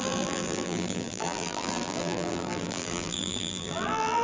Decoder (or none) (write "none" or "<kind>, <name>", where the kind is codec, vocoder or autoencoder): vocoder, BigVGAN v2